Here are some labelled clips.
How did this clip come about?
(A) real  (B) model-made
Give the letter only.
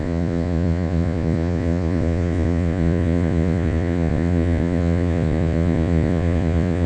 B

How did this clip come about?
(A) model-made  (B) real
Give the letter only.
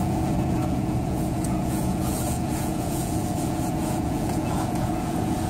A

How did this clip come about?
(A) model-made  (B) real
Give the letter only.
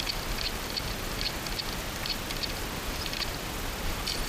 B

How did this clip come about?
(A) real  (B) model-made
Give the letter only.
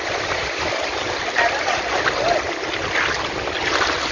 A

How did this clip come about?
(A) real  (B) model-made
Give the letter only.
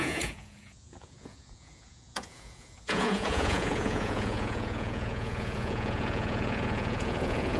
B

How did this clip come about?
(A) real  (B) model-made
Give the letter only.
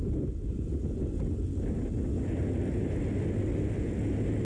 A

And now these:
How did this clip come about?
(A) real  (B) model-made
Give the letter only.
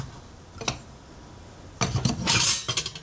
A